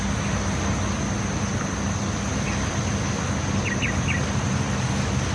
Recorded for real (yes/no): yes